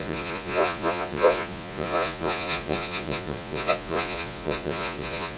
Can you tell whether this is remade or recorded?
remade